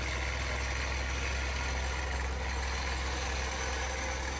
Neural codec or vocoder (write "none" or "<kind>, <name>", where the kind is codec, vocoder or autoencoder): none